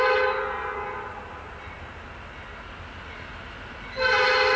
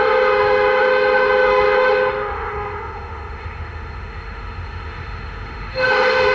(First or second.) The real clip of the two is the first